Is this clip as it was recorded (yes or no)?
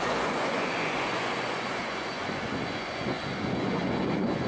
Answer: no